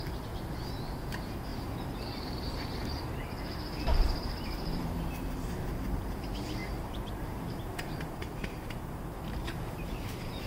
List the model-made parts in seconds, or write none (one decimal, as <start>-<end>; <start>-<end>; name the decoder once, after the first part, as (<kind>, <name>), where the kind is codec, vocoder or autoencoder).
0.0-10.5 (vocoder, BigVGAN v2)